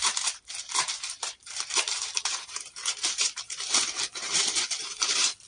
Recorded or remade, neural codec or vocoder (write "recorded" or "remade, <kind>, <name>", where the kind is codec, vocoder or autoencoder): remade, vocoder, BigVGAN v2